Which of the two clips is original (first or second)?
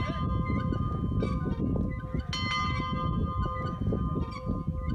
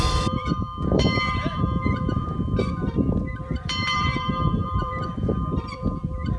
first